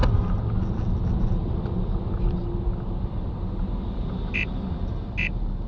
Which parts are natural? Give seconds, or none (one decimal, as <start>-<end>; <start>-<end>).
0.0-5.7